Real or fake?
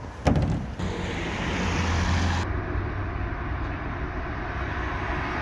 real